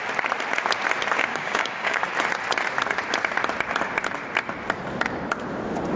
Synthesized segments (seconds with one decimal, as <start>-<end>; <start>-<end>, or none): 1.3-2.0

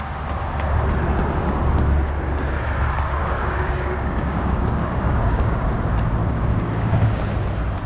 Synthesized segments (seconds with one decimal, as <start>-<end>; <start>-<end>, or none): 3.2-5.8; 6.2-7.3